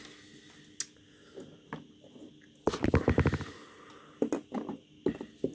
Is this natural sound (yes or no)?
yes